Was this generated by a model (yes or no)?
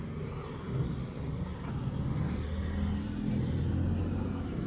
no